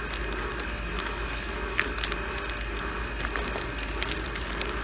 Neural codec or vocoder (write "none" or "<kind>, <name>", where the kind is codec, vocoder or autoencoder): none